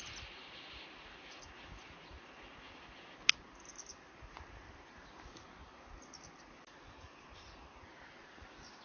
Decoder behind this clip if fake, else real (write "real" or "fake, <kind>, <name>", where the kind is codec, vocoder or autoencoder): real